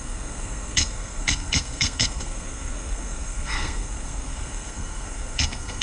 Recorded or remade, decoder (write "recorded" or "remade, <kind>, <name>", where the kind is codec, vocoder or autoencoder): remade, codec, SNAC